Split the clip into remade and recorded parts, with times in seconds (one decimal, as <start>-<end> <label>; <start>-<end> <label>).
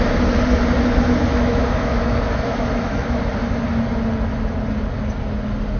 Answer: 0.0-1.3 recorded; 1.3-3.2 remade; 3.2-5.8 recorded